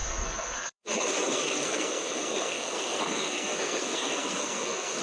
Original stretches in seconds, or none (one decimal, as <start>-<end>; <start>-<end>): none